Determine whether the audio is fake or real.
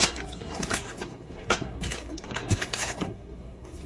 fake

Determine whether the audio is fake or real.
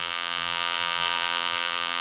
fake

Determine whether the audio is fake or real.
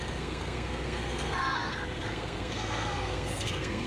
fake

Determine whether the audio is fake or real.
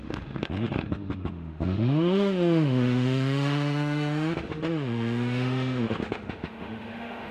fake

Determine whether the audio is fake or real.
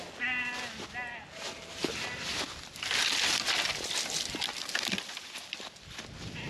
real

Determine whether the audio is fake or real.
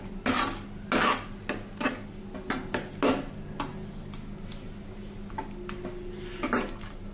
real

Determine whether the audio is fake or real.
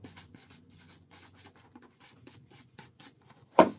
fake